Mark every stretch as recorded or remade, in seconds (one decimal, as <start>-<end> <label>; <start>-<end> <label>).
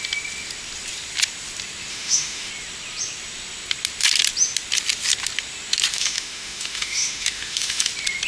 0.0-1.9 recorded; 1.9-2.5 remade; 2.5-5.9 recorded; 5.9-7.9 remade; 7.9-8.3 recorded